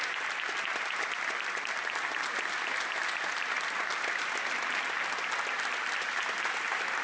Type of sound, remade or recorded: recorded